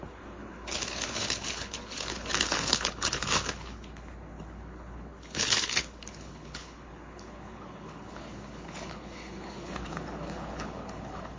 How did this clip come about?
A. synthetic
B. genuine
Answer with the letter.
A